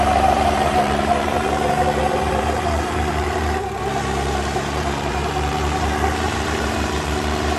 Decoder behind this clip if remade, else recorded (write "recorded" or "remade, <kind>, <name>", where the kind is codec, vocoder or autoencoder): remade, vocoder, BigVGAN v2